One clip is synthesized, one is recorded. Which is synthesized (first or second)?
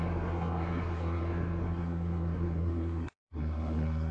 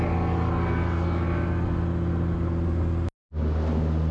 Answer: first